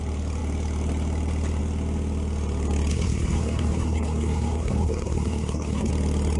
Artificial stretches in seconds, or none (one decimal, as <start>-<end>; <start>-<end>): 2.9-5.9